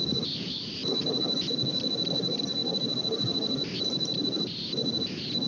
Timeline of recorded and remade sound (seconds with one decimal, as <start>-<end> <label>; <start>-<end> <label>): 0.0-5.5 recorded